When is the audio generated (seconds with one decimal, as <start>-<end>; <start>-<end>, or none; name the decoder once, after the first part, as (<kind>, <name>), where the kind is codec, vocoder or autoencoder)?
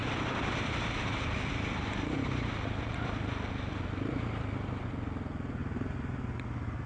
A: 0.0-3.5 (vocoder, BigVGAN v2); 5.6-6.9